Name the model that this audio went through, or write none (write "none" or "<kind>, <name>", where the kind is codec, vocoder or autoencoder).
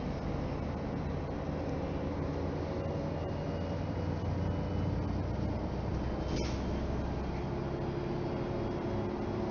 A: none